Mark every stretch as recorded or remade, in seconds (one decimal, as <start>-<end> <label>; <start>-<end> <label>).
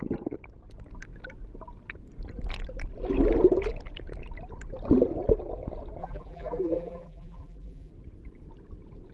0.0-6.0 recorded; 6.0-7.9 remade; 7.9-9.1 recorded